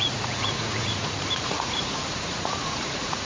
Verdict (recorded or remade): remade